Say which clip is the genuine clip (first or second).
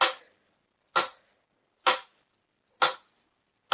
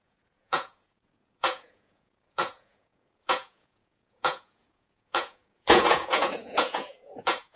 first